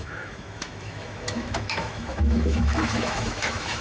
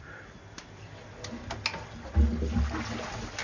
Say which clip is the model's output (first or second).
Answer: first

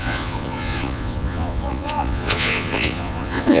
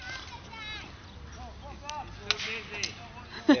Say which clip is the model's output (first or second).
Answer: first